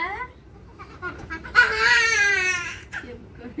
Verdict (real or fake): fake